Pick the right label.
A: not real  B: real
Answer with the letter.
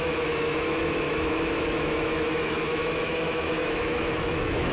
A